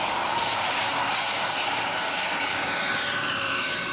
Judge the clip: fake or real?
fake